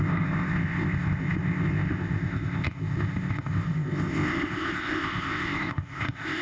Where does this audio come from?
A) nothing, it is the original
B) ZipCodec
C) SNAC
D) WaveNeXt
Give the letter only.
B